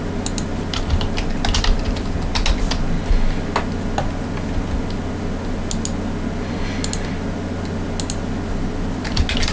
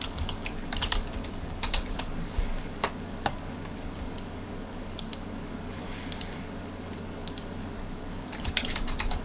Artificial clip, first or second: second